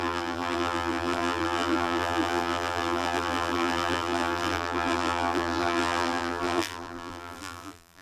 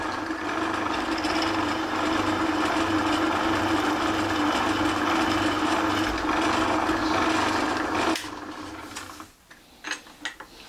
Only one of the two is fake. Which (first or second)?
first